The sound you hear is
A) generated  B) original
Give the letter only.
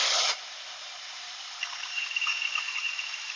A